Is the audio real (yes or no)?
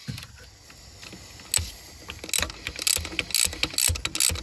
yes